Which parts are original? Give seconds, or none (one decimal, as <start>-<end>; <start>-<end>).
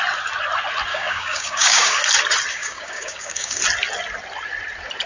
0.0-0.9; 2.0-2.5; 3.6-5.1